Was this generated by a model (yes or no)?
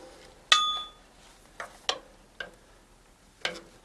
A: no